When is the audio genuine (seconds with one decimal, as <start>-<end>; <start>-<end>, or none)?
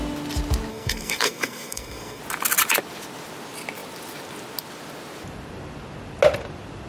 0.0-0.7; 2.2-6.9